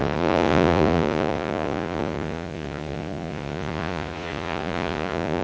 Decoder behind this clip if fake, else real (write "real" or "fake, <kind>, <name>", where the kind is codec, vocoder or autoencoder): fake, vocoder, Vocos